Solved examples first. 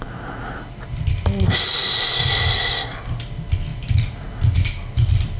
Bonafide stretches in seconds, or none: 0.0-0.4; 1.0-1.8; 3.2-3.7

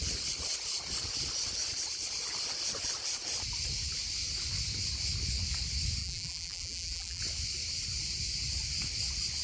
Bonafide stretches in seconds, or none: 0.0-6.0; 7.2-9.4